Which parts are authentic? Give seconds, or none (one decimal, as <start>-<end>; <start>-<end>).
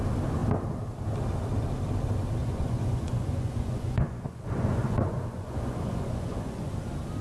0.0-2.4; 6.7-7.2